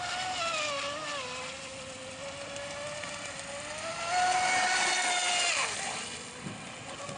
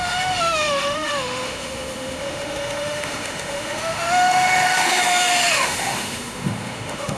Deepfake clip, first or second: second